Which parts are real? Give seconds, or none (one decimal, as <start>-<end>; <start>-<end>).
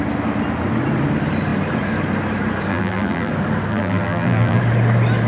0.0-2.7; 3.3-3.7; 4.6-5.3